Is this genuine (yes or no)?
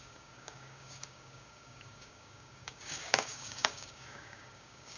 no